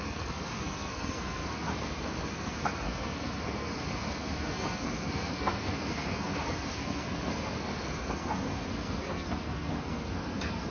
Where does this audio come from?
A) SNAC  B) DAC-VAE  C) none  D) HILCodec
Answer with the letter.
A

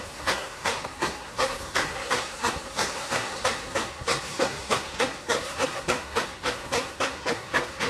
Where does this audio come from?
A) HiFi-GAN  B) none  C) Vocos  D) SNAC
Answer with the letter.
D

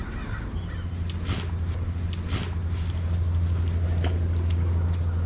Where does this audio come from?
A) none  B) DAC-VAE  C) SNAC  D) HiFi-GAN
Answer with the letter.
A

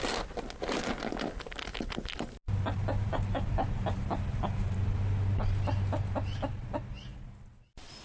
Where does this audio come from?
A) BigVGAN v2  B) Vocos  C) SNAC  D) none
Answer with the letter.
D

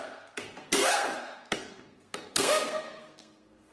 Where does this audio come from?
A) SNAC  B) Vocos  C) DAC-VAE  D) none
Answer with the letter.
A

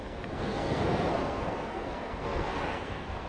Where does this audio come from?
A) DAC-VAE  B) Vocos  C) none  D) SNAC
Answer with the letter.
D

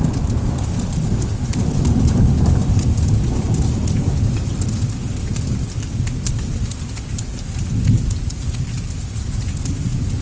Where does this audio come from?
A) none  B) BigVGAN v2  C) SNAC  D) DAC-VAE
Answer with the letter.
A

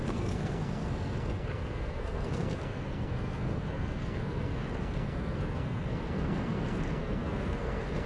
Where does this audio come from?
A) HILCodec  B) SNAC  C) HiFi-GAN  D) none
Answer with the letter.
B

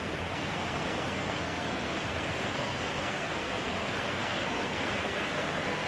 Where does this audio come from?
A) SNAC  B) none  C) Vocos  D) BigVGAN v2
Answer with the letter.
A